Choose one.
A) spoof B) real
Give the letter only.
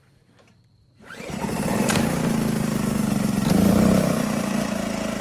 A